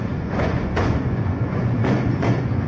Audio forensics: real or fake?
fake